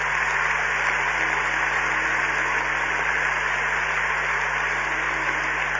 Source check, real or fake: real